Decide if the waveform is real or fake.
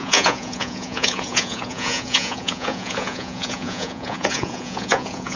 fake